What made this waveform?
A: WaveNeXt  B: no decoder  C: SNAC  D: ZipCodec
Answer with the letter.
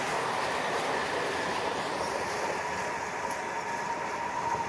B